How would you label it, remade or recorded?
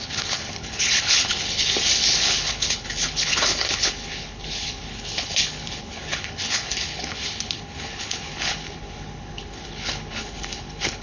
remade